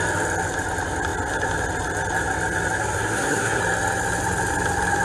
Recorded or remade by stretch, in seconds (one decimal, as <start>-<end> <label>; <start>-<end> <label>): 0.0-2.8 recorded; 2.8-3.6 remade; 3.6-5.0 recorded

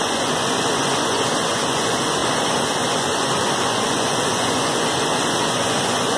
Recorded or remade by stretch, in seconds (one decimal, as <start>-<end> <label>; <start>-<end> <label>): 0.0-6.2 remade

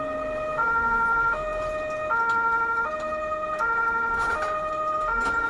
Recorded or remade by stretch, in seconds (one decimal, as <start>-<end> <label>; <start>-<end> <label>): 0.0-5.5 recorded

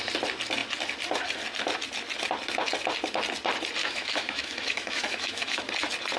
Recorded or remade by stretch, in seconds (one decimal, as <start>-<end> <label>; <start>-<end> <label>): 0.0-3.8 recorded; 3.8-5.6 remade; 5.6-6.2 recorded